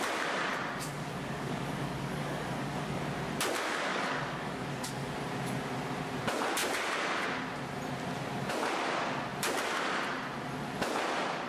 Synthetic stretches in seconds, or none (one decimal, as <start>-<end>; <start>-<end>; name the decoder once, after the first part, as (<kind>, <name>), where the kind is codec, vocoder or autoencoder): 0.9-3.0 (codec, DAC); 3.9-4.9